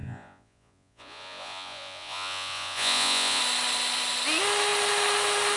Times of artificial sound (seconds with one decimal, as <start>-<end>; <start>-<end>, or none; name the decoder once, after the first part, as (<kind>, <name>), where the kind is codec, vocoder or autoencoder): 0.0-3.4 (vocoder, Vocos)